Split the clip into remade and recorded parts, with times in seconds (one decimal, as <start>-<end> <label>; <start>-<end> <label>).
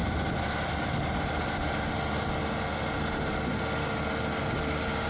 0.0-0.7 remade; 0.7-5.1 recorded